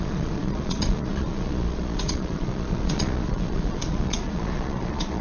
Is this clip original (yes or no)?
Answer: no